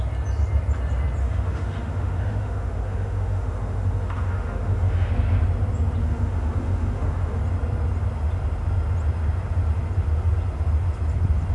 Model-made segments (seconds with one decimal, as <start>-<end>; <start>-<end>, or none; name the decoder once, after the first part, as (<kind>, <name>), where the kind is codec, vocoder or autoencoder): 1.2-5.1 (autoencoder, DAC-VAE); 6.0-7.4